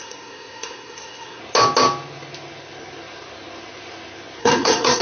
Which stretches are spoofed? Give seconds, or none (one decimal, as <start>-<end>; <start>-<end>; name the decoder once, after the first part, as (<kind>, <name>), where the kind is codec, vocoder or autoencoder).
0.0-1.4 (codec, SNAC); 4.4-5.0